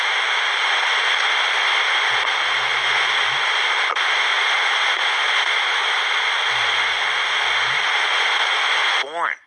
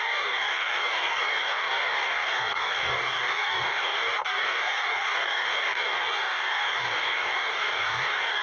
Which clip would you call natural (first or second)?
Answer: first